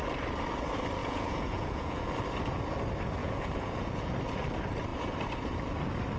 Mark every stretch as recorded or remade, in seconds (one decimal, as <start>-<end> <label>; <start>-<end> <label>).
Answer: 0.0-1.0 recorded; 1.0-2.1 remade; 2.1-3.2 recorded; 3.2-4.2 remade; 4.2-6.2 recorded